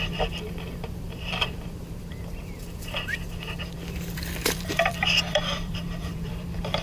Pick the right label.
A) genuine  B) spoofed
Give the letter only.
B